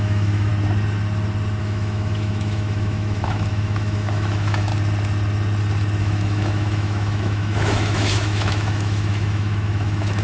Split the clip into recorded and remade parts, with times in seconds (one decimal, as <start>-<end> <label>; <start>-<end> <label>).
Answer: 0.0-0.5 remade; 0.5-1.6 recorded; 1.6-4.7 remade; 4.7-6.0 recorded; 6.0-10.2 remade